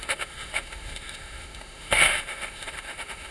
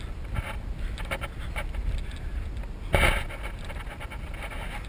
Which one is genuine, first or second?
second